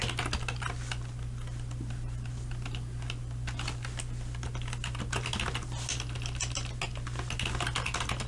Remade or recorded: recorded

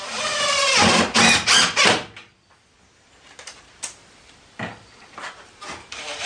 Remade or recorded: recorded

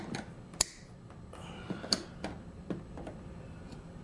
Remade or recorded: remade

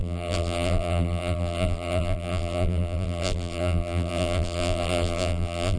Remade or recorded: remade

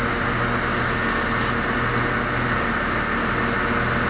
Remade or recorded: recorded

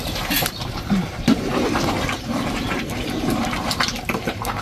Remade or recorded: remade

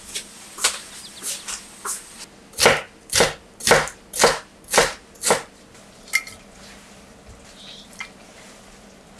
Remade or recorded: recorded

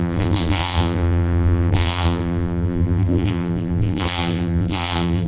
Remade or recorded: remade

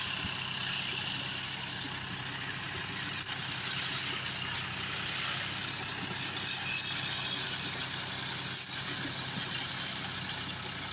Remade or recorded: recorded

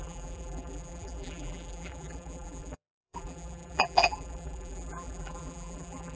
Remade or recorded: remade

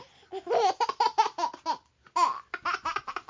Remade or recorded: recorded